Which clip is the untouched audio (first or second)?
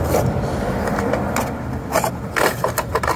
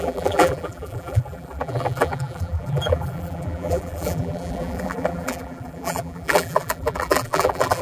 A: first